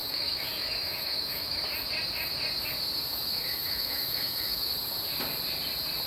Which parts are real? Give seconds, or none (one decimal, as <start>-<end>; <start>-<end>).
1.6-3.1; 4.7-6.1